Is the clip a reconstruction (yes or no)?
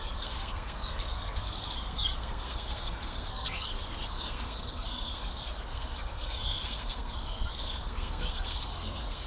yes